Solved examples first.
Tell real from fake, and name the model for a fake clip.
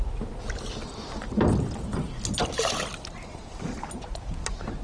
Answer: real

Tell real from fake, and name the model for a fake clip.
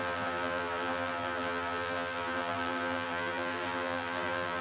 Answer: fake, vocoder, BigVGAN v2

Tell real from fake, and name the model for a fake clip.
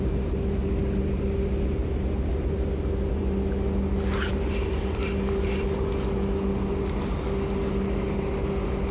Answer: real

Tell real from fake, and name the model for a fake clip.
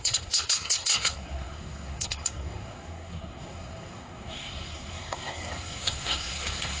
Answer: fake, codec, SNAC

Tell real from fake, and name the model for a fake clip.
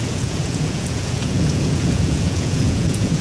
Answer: fake, vocoder, Vocos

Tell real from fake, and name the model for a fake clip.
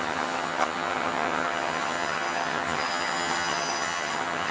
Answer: fake, vocoder, HiFi-GAN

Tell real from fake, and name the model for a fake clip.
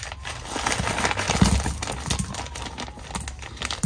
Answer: real